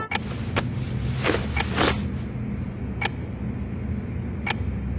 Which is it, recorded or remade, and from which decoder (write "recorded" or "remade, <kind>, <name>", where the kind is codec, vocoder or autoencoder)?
recorded